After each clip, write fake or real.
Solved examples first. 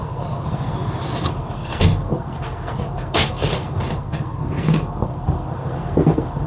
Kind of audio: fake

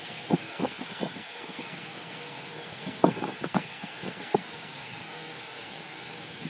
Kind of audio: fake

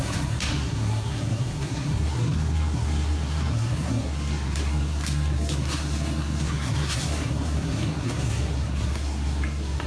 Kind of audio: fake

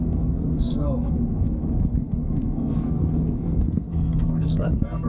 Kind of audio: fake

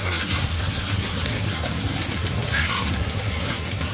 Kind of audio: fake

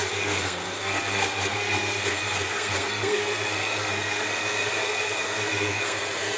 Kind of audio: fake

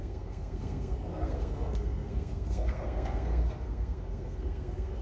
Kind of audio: fake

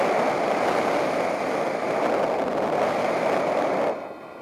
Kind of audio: real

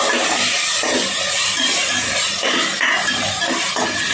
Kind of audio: real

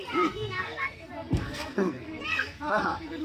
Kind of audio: fake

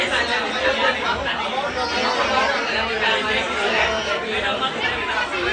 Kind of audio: real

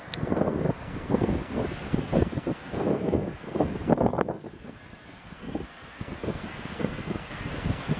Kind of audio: fake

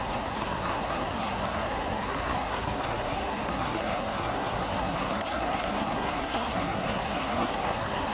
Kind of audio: fake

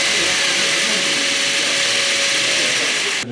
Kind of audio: real